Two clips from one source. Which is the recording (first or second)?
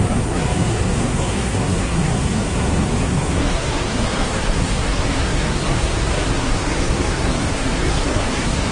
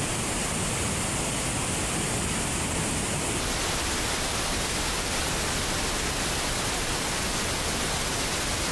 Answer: second